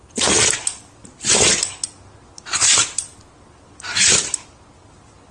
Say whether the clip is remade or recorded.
recorded